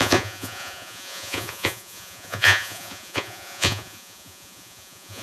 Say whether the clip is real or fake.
fake